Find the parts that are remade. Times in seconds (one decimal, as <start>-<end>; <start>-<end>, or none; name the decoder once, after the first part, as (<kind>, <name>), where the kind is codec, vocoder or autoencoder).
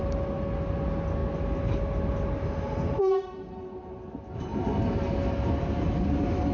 none